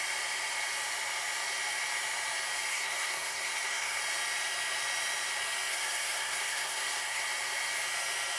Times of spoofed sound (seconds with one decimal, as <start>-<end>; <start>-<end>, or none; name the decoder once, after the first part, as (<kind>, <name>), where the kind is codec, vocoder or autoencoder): 2.7-4.0 (codec, SNAC); 5.7-7.2